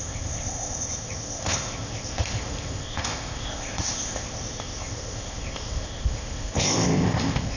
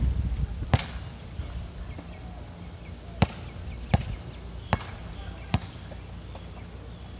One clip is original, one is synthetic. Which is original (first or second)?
second